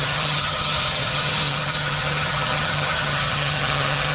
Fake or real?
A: fake